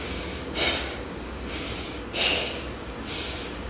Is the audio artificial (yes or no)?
yes